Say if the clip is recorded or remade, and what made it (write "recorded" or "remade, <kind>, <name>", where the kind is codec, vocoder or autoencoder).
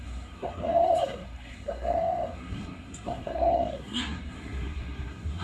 remade, codec, SNAC